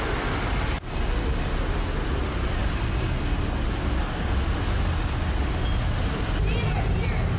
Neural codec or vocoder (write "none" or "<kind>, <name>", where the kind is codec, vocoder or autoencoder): none